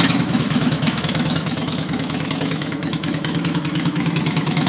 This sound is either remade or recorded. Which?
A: remade